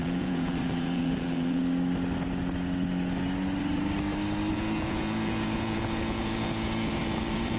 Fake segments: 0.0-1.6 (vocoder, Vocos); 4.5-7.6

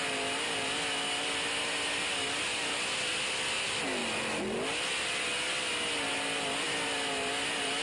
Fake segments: none

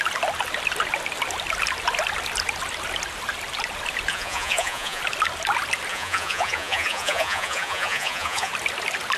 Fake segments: 4.1-5.0 (vocoder, Vocos); 5.9-8.5